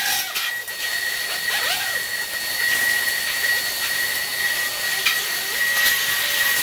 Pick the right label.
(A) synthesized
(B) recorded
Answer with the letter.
B